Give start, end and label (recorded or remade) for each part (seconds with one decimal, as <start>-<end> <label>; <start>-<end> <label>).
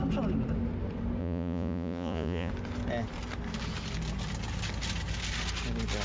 0.0-1.2 recorded; 1.2-2.5 remade; 2.5-6.0 recorded